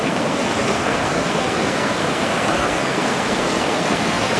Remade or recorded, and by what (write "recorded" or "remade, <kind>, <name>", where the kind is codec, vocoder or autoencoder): remade, codec, SNAC